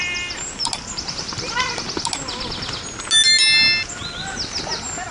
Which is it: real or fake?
real